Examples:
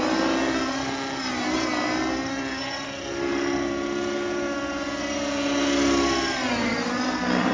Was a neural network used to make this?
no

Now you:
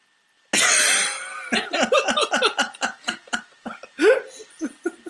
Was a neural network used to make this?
no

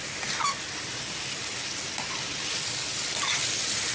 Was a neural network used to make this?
yes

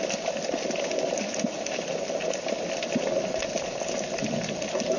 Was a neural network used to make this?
no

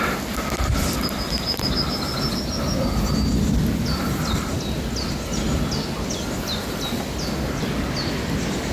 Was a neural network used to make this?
no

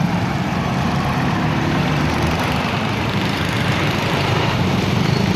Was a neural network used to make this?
yes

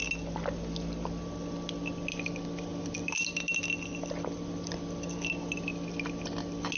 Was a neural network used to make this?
no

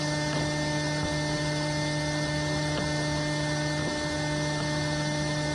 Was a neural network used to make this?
no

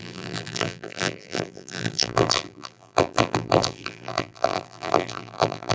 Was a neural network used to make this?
yes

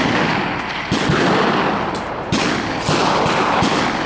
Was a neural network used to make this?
no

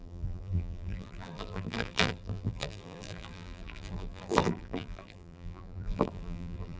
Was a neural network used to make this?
yes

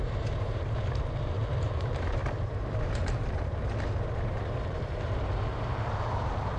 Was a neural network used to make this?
yes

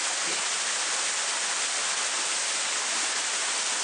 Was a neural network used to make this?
no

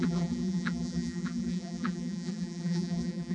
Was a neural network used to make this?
yes